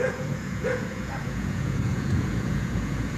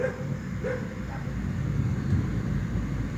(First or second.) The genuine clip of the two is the second